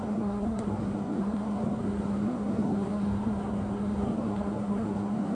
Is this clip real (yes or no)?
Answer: no